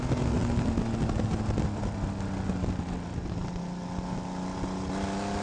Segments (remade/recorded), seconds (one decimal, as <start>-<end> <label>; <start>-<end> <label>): 0.0-5.4 recorded